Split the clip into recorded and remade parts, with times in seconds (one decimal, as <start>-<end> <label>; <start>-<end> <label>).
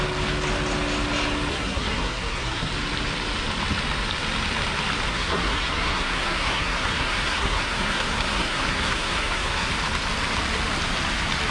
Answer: 0.0-1.5 recorded; 1.5-2.7 remade; 2.7-5.1 recorded; 5.1-9.7 remade; 9.7-11.5 recorded